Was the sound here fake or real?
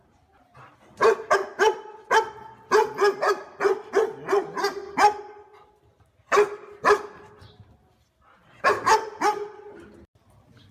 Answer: real